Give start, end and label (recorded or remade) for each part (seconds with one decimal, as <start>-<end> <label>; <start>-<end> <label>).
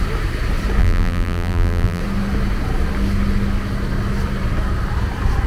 0.0-0.8 recorded; 0.8-2.0 remade; 2.0-5.5 recorded